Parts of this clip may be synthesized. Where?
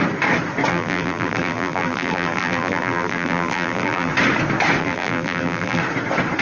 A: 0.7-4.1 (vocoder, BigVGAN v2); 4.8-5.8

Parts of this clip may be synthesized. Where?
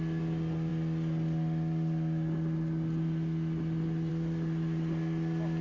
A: none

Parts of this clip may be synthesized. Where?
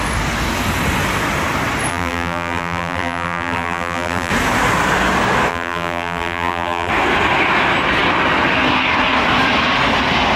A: 1.9-4.3 (vocoder, BigVGAN v2); 5.5-6.9